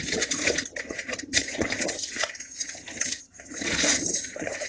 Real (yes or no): no